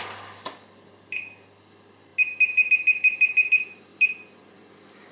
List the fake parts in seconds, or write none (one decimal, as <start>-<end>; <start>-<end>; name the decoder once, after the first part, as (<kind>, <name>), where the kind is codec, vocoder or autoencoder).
none